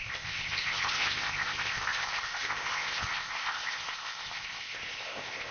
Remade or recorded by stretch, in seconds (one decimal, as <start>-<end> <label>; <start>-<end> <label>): 0.0-5.5 remade